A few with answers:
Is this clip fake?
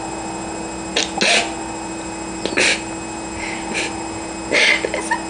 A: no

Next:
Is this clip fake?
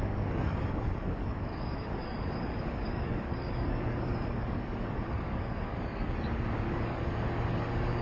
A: yes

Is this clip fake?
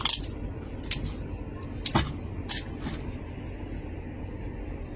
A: no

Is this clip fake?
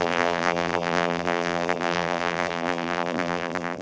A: yes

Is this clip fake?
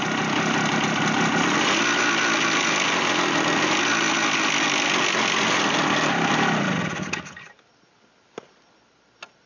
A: no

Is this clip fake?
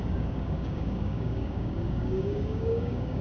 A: yes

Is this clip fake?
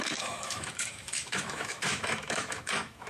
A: yes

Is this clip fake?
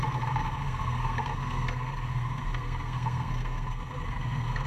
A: yes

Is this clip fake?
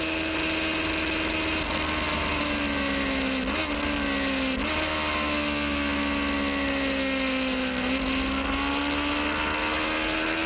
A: no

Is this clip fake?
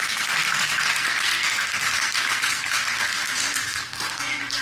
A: yes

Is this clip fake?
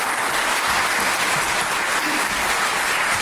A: no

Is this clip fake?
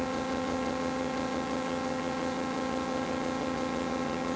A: yes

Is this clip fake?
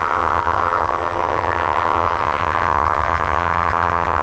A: yes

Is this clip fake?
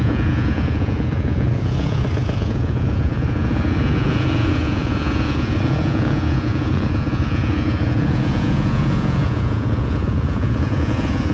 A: yes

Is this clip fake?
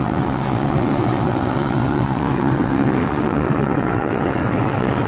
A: yes